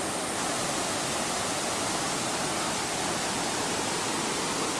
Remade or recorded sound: recorded